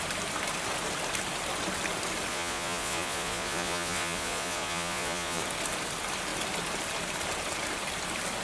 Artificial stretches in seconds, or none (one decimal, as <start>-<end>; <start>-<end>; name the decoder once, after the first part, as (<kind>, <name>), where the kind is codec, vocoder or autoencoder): 2.3-5.4 (vocoder, Vocos)